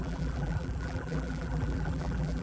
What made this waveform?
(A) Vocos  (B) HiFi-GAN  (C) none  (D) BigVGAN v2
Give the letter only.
D